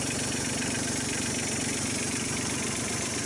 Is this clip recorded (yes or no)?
no